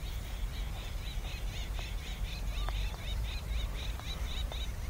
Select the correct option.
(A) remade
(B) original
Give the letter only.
A